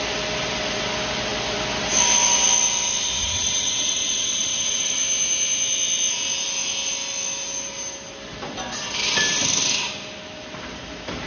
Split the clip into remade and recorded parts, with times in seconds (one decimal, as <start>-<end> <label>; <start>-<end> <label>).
0.0-3.2 recorded; 3.2-5.0 remade; 5.0-11.3 recorded